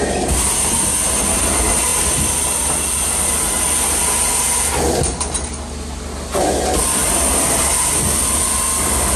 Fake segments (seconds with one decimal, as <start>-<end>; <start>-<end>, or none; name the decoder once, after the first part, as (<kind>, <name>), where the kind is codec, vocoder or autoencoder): none